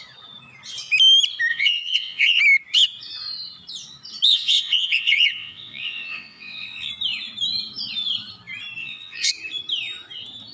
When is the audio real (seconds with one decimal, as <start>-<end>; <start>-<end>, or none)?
0.0-1.5; 2.4-4.3; 6.9-8.8; 9.3-10.5